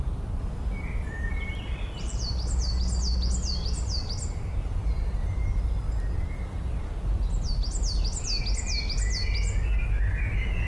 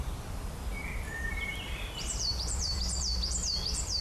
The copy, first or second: second